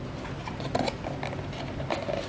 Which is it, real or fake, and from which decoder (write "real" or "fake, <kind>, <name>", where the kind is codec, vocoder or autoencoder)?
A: real